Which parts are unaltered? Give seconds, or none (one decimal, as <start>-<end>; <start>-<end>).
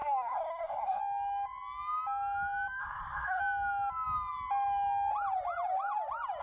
1.0-2.8; 3.4-6.4